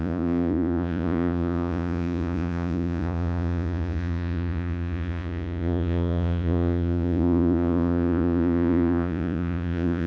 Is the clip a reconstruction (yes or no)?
yes